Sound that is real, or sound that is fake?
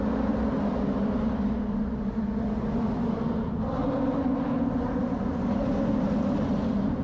real